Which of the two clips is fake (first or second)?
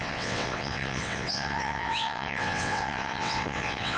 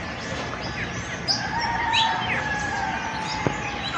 first